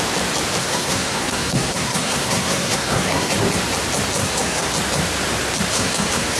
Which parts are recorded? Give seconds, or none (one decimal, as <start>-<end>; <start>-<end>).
0.0-0.6; 3.3-4.2; 4.7-5.7